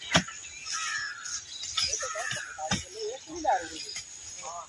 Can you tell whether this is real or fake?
real